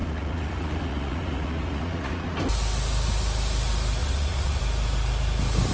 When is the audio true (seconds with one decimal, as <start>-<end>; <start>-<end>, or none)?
2.3-4.0; 4.6-5.7